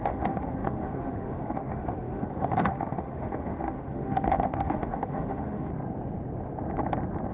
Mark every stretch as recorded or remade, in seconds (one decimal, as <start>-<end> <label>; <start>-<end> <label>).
0.0-5.7 remade; 5.7-7.3 recorded